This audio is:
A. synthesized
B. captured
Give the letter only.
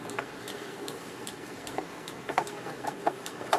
A